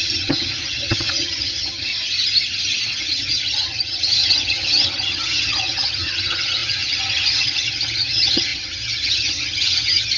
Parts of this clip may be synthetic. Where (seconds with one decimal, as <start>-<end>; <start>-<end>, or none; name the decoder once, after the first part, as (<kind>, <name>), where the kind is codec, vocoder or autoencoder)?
0.0-1.9 (vocoder, HiFi-GAN); 3.0-10.2